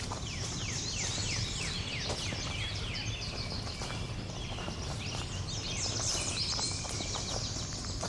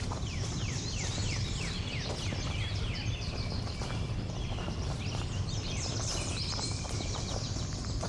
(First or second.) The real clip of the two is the first